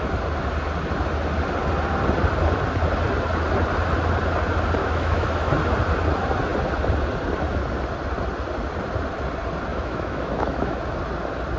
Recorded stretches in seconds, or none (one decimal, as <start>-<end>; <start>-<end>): 0.0-4.8; 5.5-9.7; 10.8-11.6